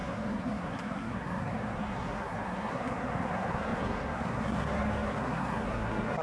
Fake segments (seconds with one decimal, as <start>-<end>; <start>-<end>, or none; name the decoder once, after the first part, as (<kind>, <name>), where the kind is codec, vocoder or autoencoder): 0.0-6.2 (codec, SNAC)